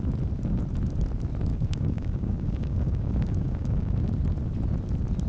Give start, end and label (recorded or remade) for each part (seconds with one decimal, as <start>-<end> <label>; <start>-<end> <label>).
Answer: 0.0-1.5 recorded; 1.5-3.9 remade; 3.9-5.3 recorded